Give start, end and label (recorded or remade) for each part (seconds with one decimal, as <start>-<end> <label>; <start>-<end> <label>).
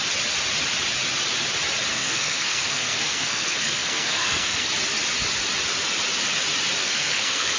0.0-1.9 recorded; 1.9-4.7 remade; 4.7-6.8 recorded; 6.8-7.6 remade